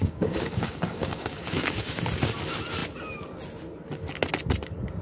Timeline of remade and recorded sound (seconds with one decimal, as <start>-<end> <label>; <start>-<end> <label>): 0.0-2.0 remade; 2.0-5.0 recorded